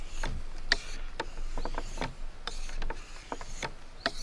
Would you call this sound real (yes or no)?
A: yes